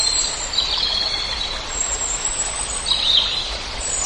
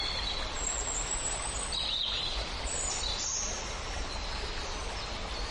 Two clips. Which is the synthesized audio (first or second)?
first